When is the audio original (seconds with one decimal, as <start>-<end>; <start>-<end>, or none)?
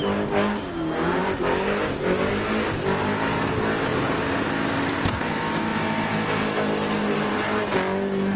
0.0-8.4